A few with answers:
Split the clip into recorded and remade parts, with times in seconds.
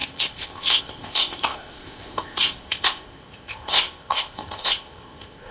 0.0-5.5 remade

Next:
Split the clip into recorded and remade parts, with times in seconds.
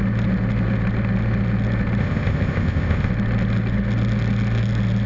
0.0-2.0 recorded; 2.0-3.1 remade; 3.1-5.1 recorded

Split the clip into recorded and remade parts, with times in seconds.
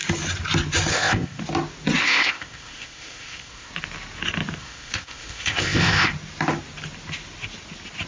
0.0-0.9 recorded; 0.9-1.4 remade; 1.4-2.0 recorded; 2.0-3.7 remade; 3.7-4.6 recorded; 4.6-6.1 remade; 6.1-8.1 recorded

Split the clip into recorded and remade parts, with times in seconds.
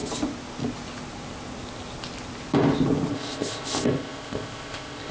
0.0-3.1 recorded; 3.1-5.1 remade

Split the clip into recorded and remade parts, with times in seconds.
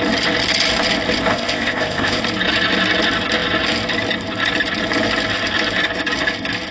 0.0-1.3 recorded; 1.3-2.2 remade; 2.2-6.7 recorded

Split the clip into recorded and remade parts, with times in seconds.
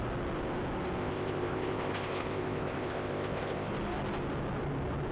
0.0-1.0 recorded; 1.0-3.7 remade; 3.7-5.1 recorded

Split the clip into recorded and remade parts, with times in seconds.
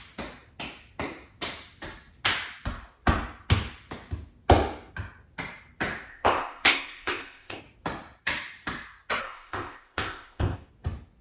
0.0-6.1 recorded; 6.1-7.6 remade; 7.6-9.2 recorded; 9.2-10.7 remade; 10.7-11.2 recorded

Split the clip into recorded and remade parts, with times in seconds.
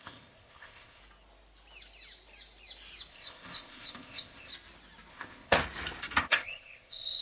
0.0-1.0 remade; 1.0-3.1 recorded; 3.1-4.5 remade; 4.5-5.1 recorded; 5.1-5.6 remade; 5.6-6.2 recorded; 6.2-7.2 remade